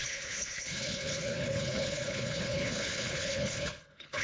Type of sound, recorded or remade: remade